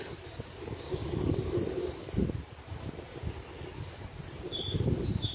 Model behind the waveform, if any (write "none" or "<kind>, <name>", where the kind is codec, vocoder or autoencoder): vocoder, BigVGAN v2